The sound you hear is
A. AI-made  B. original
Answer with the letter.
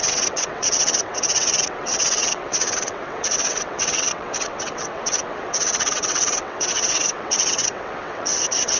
A